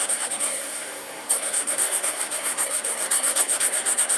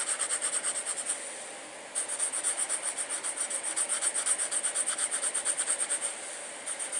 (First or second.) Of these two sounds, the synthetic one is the first